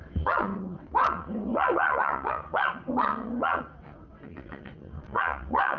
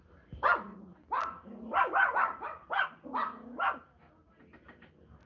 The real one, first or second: second